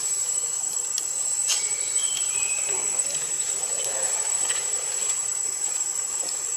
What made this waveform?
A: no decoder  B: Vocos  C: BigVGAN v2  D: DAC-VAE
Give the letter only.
C